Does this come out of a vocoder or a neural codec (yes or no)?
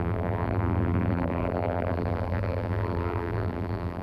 yes